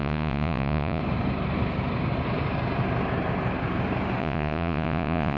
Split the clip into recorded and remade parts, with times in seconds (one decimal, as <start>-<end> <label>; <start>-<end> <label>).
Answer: 0.0-1.0 remade; 1.0-4.2 recorded; 4.2-5.4 remade